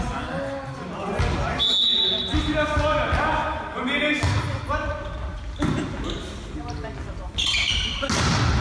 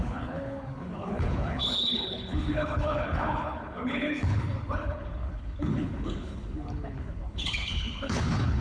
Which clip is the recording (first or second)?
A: first